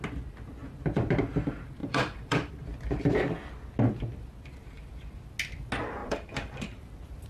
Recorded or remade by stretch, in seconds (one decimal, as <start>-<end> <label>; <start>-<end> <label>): 0.0-1.8 recorded; 1.8-2.5 remade; 2.5-6.0 recorded; 6.0-6.8 remade; 6.8-7.3 recorded